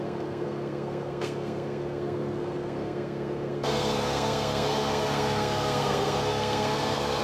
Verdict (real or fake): fake